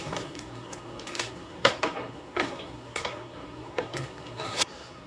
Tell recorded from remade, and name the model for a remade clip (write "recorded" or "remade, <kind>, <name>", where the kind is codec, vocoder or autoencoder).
remade, codec, SNAC